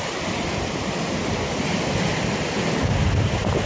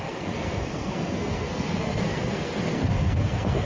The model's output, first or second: second